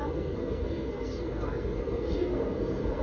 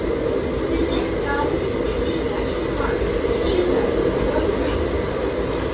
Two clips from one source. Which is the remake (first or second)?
first